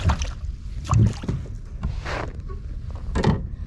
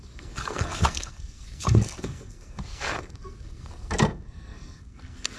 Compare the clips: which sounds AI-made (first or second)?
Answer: second